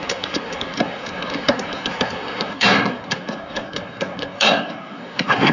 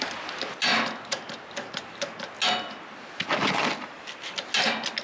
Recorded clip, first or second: second